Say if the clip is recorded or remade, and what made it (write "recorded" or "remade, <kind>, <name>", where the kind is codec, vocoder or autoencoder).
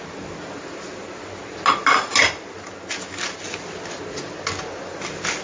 recorded